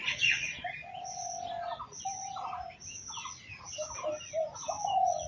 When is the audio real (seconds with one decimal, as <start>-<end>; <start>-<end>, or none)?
0.5-5.3